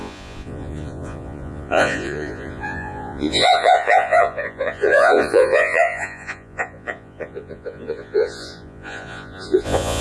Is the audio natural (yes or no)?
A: no